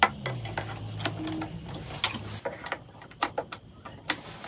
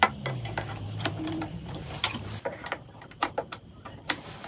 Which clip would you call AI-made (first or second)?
second